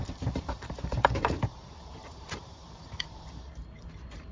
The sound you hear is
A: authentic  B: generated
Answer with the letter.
B